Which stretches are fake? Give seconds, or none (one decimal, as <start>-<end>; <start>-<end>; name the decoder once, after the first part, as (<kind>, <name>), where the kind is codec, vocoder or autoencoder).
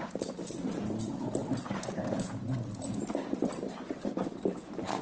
none